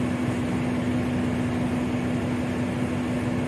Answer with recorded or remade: recorded